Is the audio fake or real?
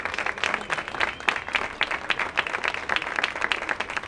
real